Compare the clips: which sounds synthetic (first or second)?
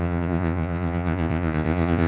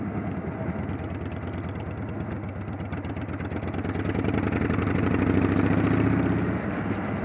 first